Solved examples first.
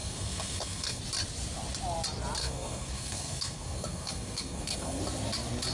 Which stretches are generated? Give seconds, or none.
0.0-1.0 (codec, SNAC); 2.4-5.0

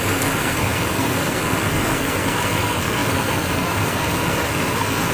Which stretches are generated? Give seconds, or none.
0.0-5.1 (codec, SNAC)

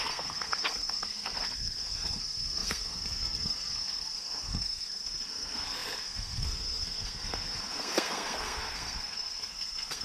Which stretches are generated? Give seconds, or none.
0.0-10.0 (codec, SNAC)

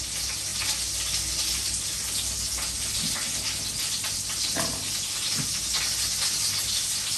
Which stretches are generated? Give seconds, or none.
none

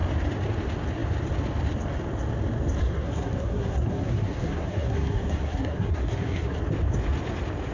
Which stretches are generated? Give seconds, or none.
2.8-6.6 (codec, SNAC)